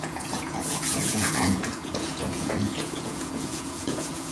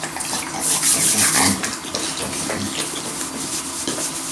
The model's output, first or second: first